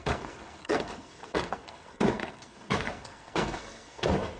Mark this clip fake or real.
fake